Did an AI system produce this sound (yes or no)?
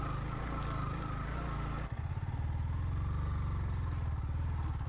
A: no